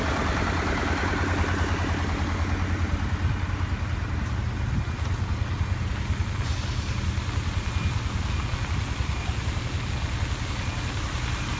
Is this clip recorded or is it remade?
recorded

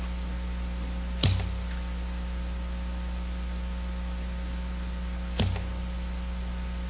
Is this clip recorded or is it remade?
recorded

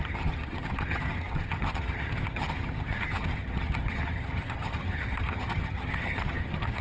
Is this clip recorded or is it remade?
remade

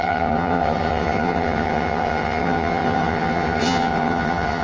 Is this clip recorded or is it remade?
remade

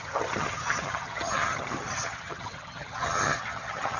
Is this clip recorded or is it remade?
remade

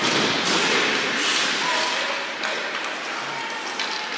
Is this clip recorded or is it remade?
recorded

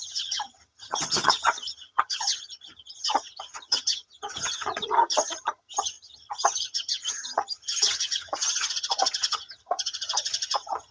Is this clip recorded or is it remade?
remade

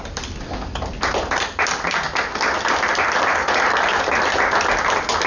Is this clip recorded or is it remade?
recorded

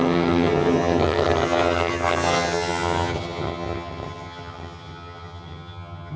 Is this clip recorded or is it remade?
remade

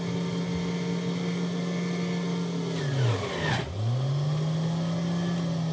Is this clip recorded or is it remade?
recorded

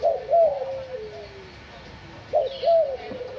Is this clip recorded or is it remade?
recorded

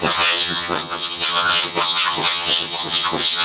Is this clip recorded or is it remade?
remade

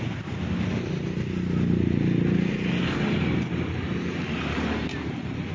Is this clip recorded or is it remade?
recorded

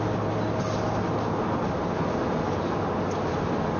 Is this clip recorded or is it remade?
recorded